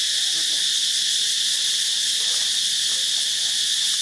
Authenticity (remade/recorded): recorded